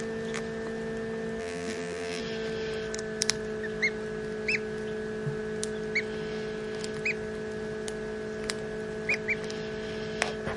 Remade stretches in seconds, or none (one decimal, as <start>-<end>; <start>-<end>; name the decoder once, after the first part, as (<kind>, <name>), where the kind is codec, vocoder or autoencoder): 1.4-2.2 (vocoder, BigVGAN v2)